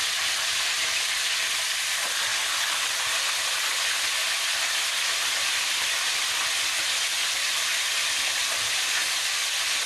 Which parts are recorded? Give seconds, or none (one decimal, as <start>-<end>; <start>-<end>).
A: 0.0-7.2; 8.6-9.9